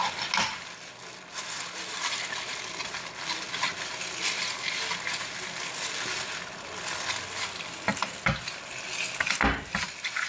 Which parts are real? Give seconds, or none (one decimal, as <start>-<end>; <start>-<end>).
0.0-10.3